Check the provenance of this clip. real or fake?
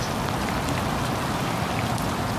real